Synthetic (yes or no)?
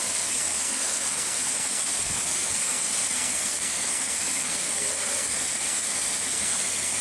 yes